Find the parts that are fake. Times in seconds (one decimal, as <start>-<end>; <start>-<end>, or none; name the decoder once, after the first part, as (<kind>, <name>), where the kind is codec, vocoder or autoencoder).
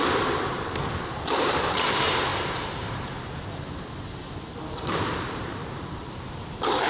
0.0-6.9 (vocoder, BigVGAN v2)